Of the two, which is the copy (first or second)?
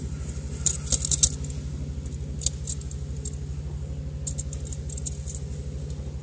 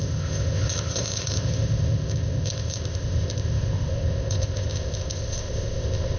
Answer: second